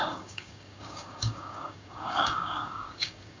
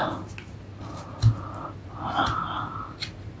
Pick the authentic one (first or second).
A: second